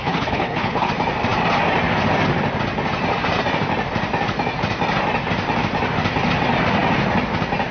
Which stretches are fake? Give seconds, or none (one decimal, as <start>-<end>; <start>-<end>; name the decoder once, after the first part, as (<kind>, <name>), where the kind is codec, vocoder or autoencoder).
0.0-0.9 (codec, HILCodec)